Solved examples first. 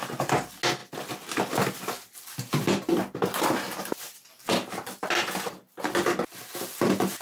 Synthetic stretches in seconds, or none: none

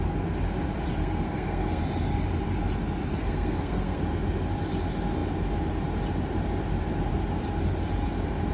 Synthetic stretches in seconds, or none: 1.0-1.8 (codec, SNAC); 3.1-4.0

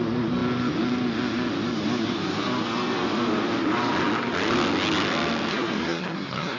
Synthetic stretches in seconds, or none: 5.5-6.6 (codec, SNAC)

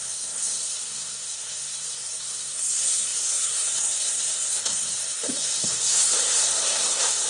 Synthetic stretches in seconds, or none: 0.0-7.3 (codec, SNAC)

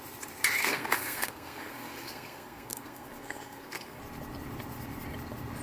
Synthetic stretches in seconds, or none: 0.6-4.0 (codec, SNAC)

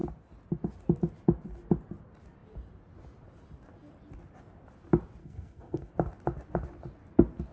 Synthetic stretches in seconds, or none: 5.2-5.9 (codec, SNAC)